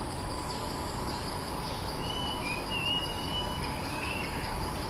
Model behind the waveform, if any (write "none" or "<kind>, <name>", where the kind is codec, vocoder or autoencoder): codec, DAC